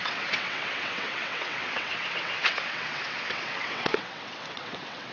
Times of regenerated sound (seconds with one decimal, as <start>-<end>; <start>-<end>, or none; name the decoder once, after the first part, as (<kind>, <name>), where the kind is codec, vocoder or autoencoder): 0.0-5.1 (vocoder, WaveNeXt)